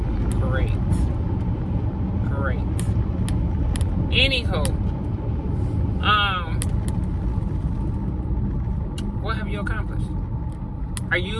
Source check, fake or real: real